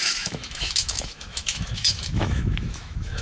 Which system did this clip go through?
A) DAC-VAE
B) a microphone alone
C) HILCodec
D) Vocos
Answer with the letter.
A